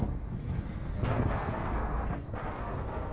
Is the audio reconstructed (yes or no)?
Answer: yes